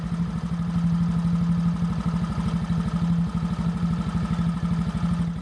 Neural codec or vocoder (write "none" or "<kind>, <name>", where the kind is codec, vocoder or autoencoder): none